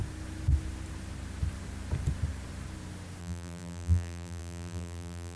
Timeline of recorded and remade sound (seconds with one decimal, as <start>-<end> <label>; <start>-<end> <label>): 0.0-3.2 recorded; 3.2-5.4 remade